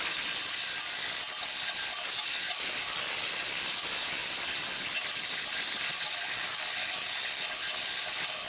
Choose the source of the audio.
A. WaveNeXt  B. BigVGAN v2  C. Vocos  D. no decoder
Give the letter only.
D